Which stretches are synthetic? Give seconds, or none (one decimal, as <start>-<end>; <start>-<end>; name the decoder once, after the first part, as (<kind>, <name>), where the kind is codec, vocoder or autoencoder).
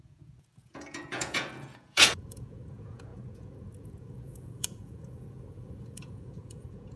0.0-7.0 (vocoder, Vocos)